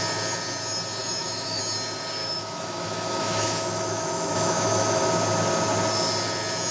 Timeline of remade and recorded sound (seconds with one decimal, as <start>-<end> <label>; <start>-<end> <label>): 0.0-1.0 recorded; 1.0-1.6 remade; 1.6-2.2 recorded; 2.2-5.1 remade; 5.1-6.7 recorded